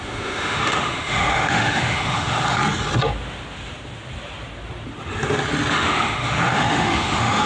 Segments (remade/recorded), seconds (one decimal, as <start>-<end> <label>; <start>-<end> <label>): 0.0-2.6 remade; 2.6-5.7 recorded; 5.7-7.5 remade